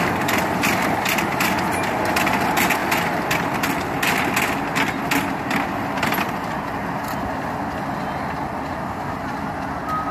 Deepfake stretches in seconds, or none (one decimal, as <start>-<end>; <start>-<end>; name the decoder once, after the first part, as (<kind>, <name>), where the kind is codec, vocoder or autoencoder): none